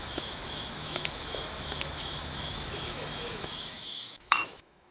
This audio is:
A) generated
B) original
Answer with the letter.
A